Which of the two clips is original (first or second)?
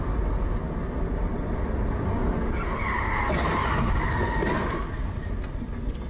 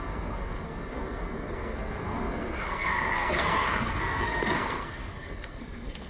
first